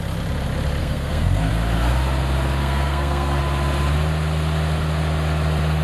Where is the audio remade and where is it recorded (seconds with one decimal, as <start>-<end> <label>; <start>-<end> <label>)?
0.0-0.8 recorded; 0.8-1.5 remade; 1.5-2.6 recorded; 2.6-3.4 remade; 3.4-5.8 recorded